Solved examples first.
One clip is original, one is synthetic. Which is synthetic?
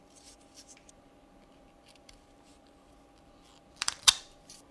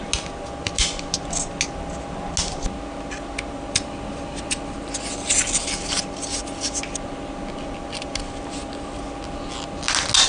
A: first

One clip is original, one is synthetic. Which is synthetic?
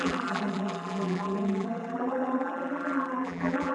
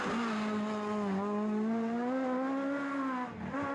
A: first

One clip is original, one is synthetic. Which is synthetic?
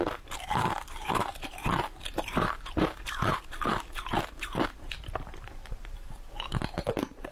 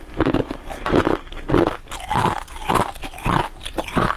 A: first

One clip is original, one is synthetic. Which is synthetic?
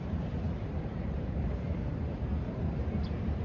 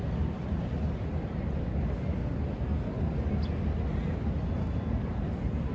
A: first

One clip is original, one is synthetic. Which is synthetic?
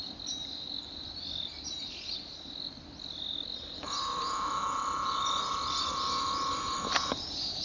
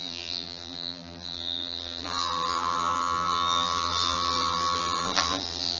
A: second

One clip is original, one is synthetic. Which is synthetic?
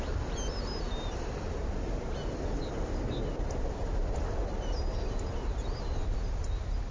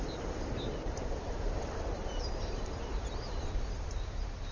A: second